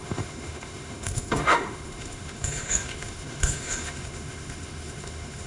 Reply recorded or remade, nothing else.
remade